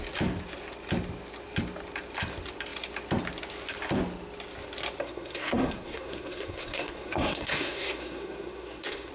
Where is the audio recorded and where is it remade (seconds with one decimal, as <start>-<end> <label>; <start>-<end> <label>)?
0.0-5.0 recorded; 5.0-9.1 remade